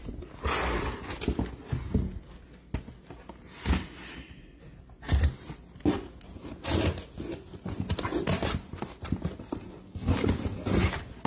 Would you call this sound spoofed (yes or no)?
no